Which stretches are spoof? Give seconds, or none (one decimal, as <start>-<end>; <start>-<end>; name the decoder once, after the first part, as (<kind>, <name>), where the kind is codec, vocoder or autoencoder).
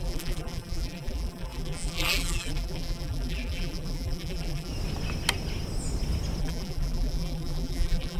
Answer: 0.0-4.7 (vocoder, BigVGAN v2); 6.4-8.2